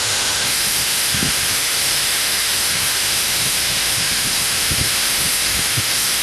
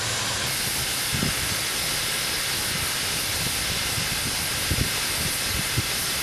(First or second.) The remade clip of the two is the first